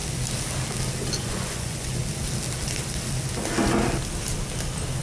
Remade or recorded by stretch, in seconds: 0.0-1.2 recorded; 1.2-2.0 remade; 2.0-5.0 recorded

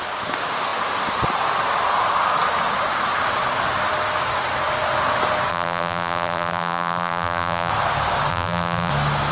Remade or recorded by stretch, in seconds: 0.0-5.5 recorded; 5.5-7.7 remade; 7.7-8.3 recorded; 8.3-8.9 remade; 8.9-9.3 recorded

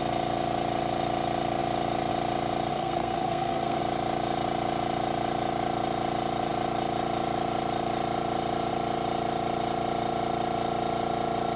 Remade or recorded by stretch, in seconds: 0.0-2.7 recorded; 2.7-3.8 remade; 3.8-11.6 recorded

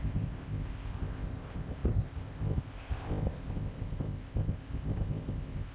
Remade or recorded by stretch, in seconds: 0.0-5.7 remade

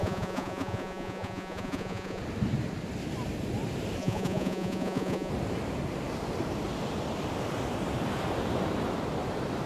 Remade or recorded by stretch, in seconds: 0.0-2.2 remade; 2.2-4.0 recorded; 4.0-5.3 remade; 5.3-9.7 recorded

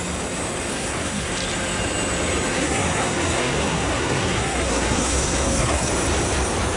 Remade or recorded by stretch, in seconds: 0.0-0.7 recorded; 0.7-1.3 remade; 1.3-2.5 recorded; 2.5-5.9 remade; 5.9-6.8 recorded

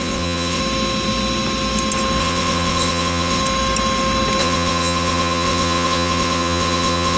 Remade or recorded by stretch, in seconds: 0.0-0.6 remade; 0.6-2.2 recorded; 2.2-3.4 remade; 3.4-4.4 recorded; 4.4-7.2 remade